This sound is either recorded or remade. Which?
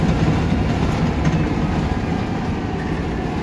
recorded